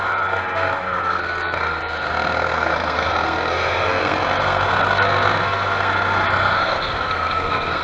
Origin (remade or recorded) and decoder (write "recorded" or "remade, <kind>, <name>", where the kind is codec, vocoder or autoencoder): remade, codec, SNAC